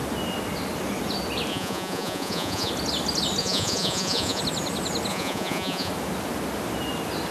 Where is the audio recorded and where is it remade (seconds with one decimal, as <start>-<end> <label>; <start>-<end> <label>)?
0.0-1.5 recorded; 1.5-2.7 remade; 2.7-3.4 recorded; 3.4-4.4 remade; 4.4-5.1 recorded; 5.1-5.9 remade; 5.9-7.3 recorded